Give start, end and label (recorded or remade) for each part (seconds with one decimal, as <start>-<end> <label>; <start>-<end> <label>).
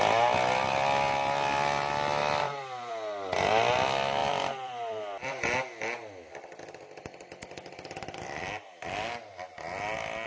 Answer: 0.0-2.2 recorded; 2.2-2.9 remade; 2.9-4.2 recorded; 4.2-5.4 remade; 5.4-10.3 recorded